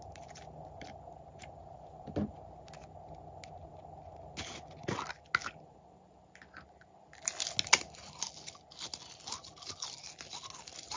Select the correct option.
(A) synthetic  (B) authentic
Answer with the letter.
B